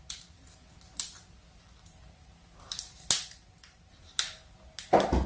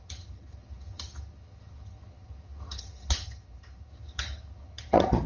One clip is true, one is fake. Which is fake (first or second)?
second